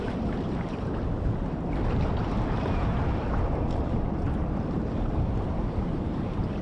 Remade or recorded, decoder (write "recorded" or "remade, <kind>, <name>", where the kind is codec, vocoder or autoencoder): remade, vocoder, BigVGAN v2